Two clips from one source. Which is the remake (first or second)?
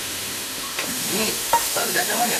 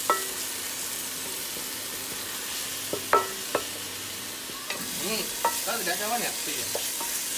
first